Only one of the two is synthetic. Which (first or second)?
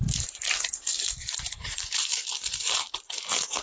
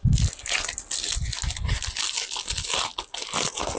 first